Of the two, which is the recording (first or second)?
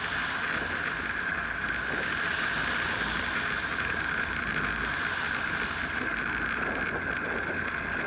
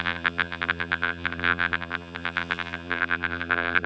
first